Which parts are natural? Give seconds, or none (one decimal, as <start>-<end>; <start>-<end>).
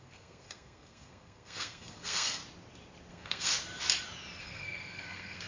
2.4-3.1; 3.5-4.4